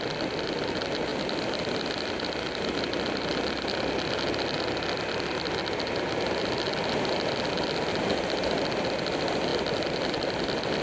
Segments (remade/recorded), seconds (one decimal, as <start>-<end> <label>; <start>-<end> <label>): 0.0-10.8 recorded